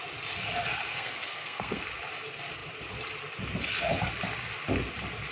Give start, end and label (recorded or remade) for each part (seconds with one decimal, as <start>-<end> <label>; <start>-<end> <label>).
0.0-0.9 recorded; 0.9-1.8 remade; 1.8-5.3 recorded